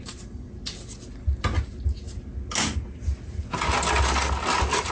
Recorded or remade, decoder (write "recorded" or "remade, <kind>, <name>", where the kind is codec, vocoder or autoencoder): recorded